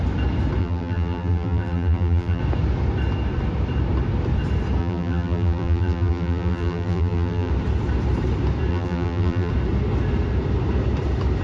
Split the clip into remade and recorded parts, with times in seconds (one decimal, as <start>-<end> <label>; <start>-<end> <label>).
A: 0.0-0.6 recorded; 0.6-2.4 remade; 2.4-4.8 recorded; 4.8-7.5 remade; 7.5-8.7 recorded; 8.7-9.5 remade; 9.5-11.4 recorded